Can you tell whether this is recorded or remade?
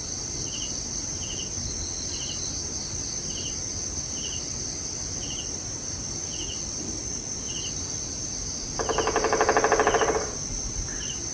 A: recorded